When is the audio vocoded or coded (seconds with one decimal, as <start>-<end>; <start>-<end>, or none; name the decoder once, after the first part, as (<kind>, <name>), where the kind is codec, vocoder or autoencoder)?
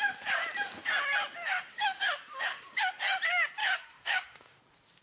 1.7-2.8 (autoencoder, DAC-VAE); 3.6-4.6